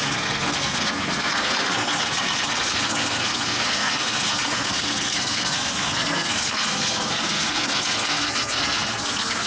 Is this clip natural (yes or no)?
no